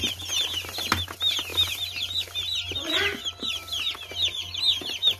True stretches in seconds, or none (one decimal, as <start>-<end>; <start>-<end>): 0.0-5.2